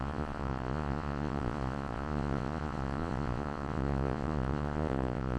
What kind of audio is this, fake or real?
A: fake